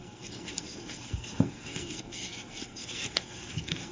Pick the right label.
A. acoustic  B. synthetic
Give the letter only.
B